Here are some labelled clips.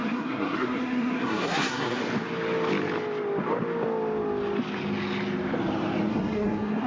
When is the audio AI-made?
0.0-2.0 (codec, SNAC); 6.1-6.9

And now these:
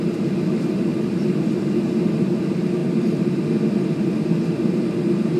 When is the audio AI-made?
2.8-3.4 (vocoder, BigVGAN v2)

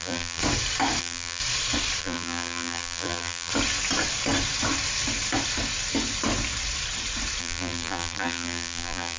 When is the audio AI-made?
0.0-0.4 (vocoder, BigVGAN v2); 1.0-1.4; 2.0-3.5; 7.4-9.2

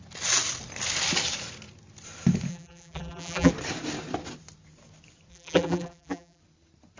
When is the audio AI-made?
2.5-3.5 (vocoder, BigVGAN v2); 5.3-6.4

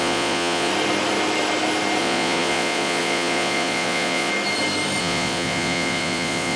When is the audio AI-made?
0.0-0.7 (vocoder, Vocos); 2.0-4.3; 5.0-6.6

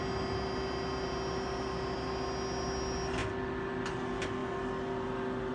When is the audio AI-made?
none